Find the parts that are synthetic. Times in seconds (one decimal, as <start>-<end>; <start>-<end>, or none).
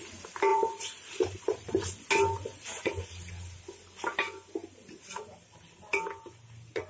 0.5-1.7; 2.5-3.3